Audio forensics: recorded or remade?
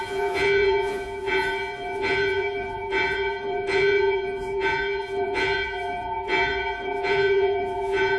remade